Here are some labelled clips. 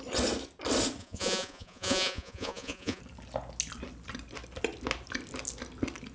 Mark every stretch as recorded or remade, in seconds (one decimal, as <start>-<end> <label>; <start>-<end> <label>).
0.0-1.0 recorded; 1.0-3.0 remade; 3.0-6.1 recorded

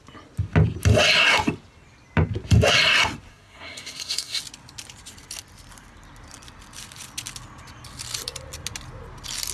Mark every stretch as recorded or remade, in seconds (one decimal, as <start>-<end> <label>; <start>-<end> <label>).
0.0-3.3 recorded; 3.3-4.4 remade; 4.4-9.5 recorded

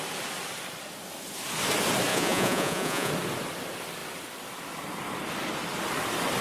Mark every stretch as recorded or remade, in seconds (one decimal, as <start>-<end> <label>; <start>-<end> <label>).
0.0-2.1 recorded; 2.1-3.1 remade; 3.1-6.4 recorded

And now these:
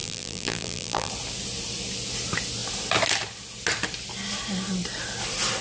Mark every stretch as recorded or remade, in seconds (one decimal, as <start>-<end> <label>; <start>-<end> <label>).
0.0-1.1 remade; 1.1-5.6 recorded

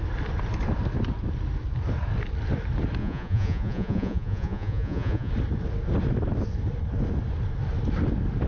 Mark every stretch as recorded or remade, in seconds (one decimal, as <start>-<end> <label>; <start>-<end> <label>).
0.0-3.0 recorded; 3.0-5.3 remade; 5.3-8.5 recorded

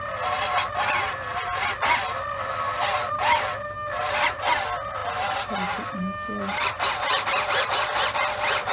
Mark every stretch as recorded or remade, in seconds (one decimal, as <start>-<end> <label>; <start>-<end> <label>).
0.0-8.7 recorded

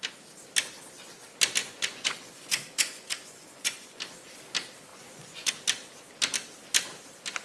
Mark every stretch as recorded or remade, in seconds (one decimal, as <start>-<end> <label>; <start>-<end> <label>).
0.0-1.6 recorded; 1.6-4.0 remade; 4.0-4.9 recorded; 4.9-5.5 remade; 5.5-7.4 recorded